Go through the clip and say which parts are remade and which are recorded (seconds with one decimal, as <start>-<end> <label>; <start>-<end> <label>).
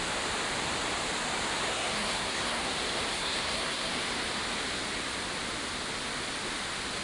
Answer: 0.0-1.7 recorded; 1.7-2.7 remade; 2.7-3.1 recorded; 3.1-3.9 remade; 3.9-7.0 recorded